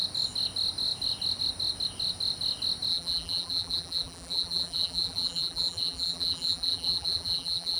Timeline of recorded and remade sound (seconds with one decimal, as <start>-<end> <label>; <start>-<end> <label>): 0.0-2.9 recorded; 2.9-7.8 remade

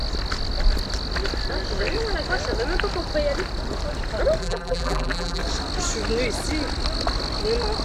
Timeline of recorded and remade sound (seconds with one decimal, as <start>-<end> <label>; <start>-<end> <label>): 0.0-4.4 recorded; 4.4-5.4 remade; 5.4-7.8 recorded

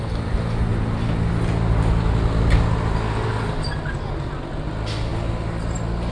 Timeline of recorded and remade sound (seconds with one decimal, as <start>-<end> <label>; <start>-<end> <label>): 0.0-6.1 recorded

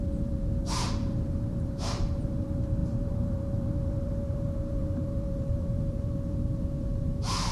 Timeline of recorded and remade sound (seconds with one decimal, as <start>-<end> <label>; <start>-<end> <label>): 0.0-7.5 remade

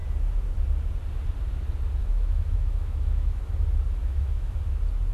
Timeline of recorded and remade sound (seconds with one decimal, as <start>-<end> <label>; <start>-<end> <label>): 0.0-2.0 recorded; 2.0-3.4 remade; 3.4-4.0 recorded; 4.0-4.6 remade; 4.6-5.1 recorded